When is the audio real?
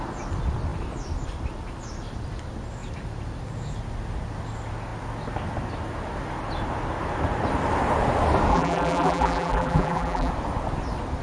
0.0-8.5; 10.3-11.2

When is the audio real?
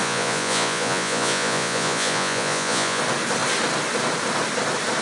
3.0-5.0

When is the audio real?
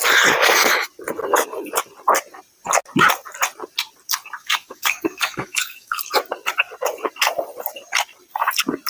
0.0-4.4; 6.1-8.9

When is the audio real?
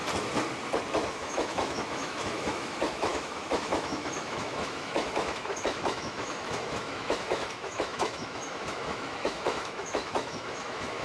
0.0-1.1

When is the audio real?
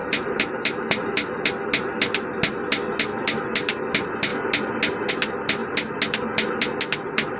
0.0-7.4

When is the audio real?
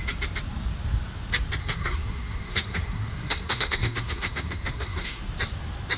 0.0-1.6; 5.2-6.0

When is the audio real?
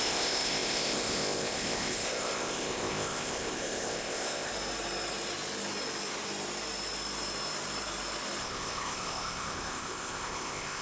4.5-8.4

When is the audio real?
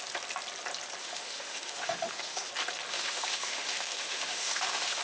0.0-1.0; 2.5-2.9